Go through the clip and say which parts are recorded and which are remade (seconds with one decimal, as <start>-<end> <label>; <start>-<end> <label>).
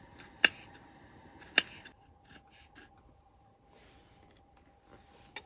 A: 0.0-5.5 recorded